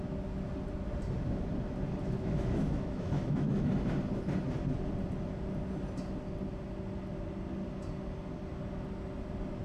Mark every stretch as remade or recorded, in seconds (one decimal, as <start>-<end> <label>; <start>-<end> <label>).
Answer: 0.0-2.0 recorded; 2.0-3.7 remade; 3.7-9.6 recorded